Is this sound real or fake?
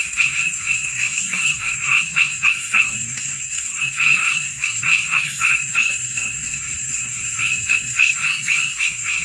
fake